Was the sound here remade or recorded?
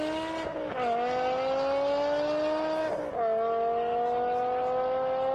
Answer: recorded